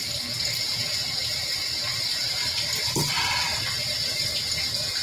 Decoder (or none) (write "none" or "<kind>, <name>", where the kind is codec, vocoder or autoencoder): none